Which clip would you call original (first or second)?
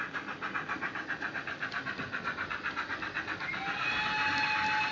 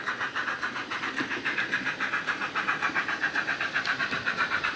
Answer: first